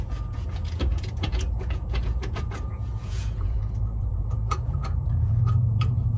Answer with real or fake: fake